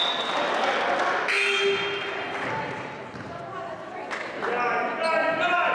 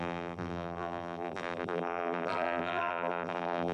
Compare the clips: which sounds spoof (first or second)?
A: second